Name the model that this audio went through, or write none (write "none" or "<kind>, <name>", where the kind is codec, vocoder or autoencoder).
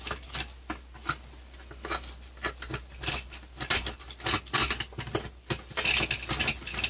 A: none